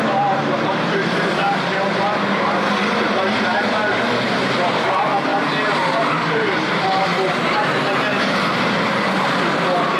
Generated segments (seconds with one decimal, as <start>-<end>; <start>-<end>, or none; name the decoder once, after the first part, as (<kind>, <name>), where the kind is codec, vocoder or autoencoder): none